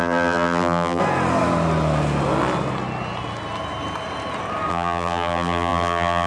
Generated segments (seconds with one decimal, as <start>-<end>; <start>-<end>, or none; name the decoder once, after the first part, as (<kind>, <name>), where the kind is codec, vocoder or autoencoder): 0.0-1.0 (vocoder, BigVGAN v2); 4.7-6.3